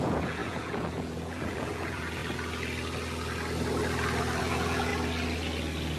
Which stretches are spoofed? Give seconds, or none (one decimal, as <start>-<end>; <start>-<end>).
0.0-2.2; 4.4-4.9